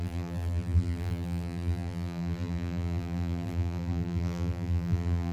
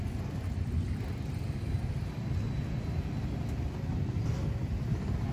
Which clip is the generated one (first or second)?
first